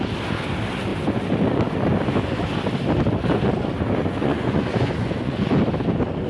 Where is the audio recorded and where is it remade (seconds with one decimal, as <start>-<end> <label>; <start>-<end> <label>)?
0.0-4.0 recorded; 4.0-5.5 remade; 5.5-6.3 recorded